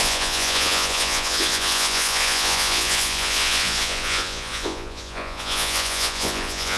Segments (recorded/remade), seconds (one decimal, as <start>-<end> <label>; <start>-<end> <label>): 0.0-6.8 remade